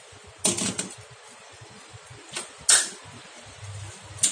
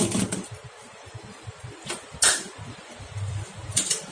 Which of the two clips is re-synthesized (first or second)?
second